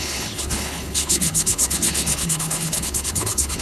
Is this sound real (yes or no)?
no